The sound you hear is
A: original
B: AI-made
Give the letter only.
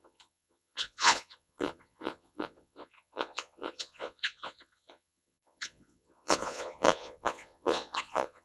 B